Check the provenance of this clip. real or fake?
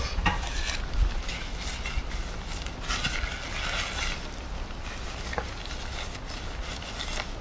real